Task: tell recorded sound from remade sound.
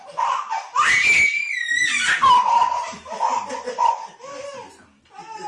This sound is recorded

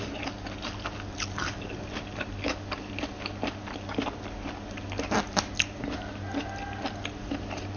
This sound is recorded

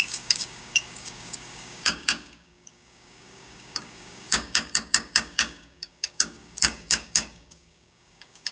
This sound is remade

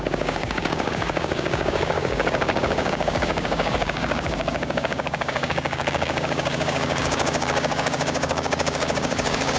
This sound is remade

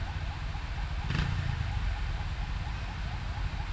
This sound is recorded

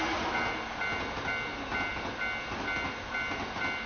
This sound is recorded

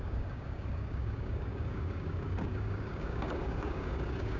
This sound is remade